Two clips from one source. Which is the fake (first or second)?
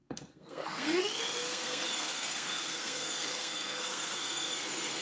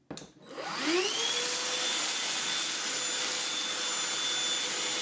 first